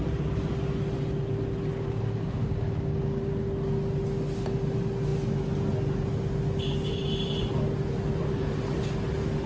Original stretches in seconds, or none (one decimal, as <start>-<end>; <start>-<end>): 0.0-1.7; 3.3-9.5